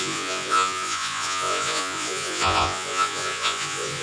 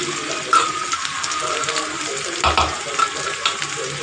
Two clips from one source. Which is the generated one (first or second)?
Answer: first